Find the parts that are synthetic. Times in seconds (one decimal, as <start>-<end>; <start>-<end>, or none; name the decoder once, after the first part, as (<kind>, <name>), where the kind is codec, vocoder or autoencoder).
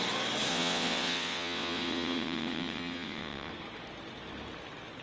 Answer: 0.5-3.5 (vocoder, WaveNeXt)